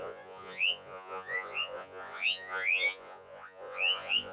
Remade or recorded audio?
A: remade